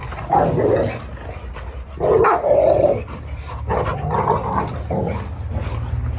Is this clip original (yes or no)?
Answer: yes